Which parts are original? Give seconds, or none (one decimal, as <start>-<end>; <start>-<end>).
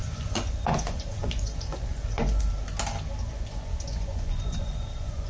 2.5-3.2